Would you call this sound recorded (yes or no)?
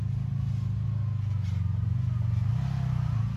yes